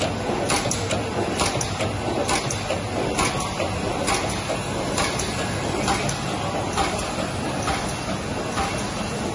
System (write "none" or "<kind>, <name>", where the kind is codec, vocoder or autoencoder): none